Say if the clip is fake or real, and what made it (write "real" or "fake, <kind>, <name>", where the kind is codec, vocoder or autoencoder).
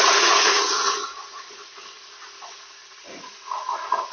fake, vocoder, Vocos